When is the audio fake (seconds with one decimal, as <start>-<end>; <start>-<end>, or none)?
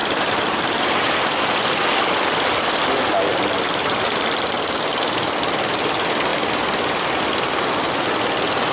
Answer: 0.0-1.1